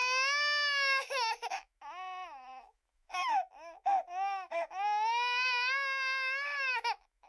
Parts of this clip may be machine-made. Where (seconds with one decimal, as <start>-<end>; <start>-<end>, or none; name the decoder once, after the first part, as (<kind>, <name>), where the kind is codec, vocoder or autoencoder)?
0.0-7.3 (autoencoder, DAC-VAE)